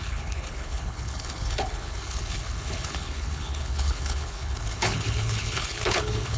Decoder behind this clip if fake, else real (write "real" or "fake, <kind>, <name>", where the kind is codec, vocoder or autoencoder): fake, codec, HILCodec